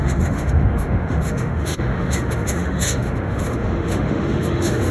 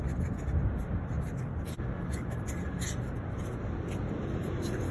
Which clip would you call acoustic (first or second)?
second